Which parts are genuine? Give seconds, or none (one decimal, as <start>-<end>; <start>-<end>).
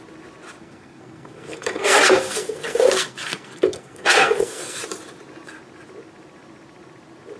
0.0-0.6; 4.8-7.4